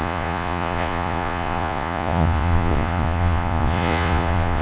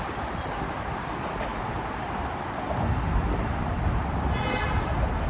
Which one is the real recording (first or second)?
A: second